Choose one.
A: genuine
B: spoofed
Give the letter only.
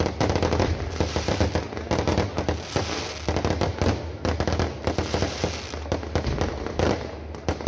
A